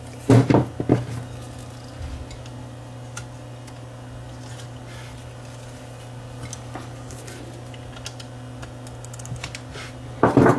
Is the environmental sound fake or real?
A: real